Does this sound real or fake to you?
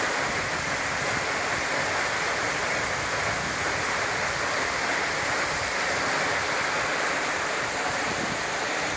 real